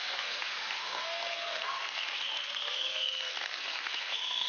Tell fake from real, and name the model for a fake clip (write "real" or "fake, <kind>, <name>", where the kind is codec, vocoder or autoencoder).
fake, codec, SNAC